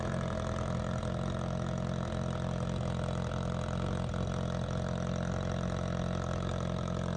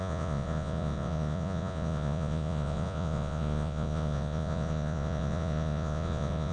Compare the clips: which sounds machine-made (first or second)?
second